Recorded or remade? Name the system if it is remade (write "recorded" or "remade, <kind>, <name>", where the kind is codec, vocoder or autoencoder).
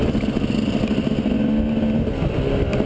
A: recorded